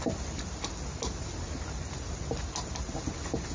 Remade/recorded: recorded